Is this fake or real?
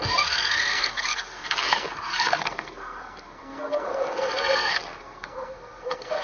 fake